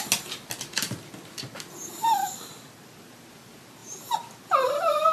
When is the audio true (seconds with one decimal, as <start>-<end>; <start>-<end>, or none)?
0.0-5.1